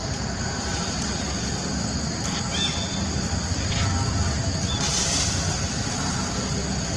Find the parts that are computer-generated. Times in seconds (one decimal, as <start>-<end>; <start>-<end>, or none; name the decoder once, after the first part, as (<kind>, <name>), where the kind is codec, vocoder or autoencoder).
0.0-1.2 (vocoder, BigVGAN v2)